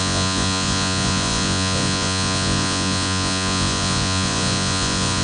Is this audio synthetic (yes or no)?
yes